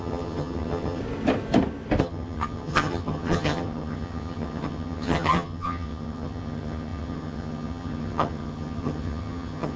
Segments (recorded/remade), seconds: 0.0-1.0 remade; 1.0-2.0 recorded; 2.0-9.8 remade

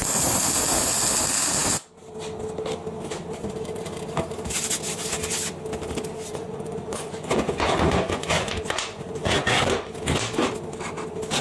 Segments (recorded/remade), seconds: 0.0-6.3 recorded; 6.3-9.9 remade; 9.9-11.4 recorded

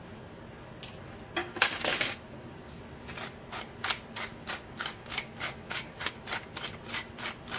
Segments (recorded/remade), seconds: 0.0-1.4 recorded; 1.4-2.8 remade; 2.8-4.3 recorded; 4.3-6.1 remade; 6.1-7.6 recorded

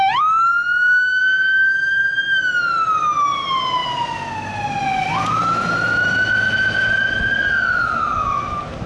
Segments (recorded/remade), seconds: 0.0-1.2 recorded; 1.2-2.1 remade; 2.1-8.9 recorded

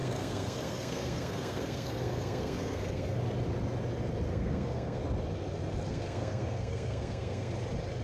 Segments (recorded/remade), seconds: 0.0-3.2 remade; 3.2-4.3 recorded; 4.3-5.0 remade; 5.0-5.9 recorded; 5.9-7.5 remade; 7.5-8.0 recorded

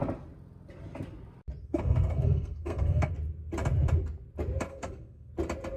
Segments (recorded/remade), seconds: 0.0-1.6 recorded; 1.6-3.1 remade; 3.1-4.7 recorded; 4.7-5.3 remade; 5.3-5.8 recorded